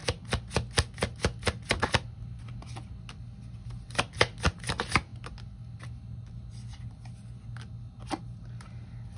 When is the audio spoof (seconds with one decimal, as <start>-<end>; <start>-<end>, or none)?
none